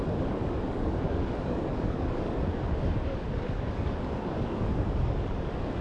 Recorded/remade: remade